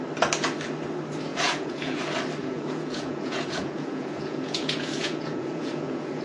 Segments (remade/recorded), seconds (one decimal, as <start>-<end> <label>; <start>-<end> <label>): 0.0-1.3 recorded; 1.3-2.0 remade; 2.0-2.4 recorded; 2.4-6.2 remade